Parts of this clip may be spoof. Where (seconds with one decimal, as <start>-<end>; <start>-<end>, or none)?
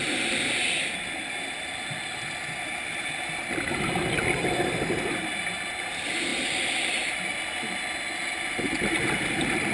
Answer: none